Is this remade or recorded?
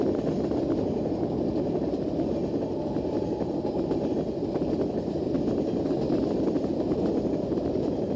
recorded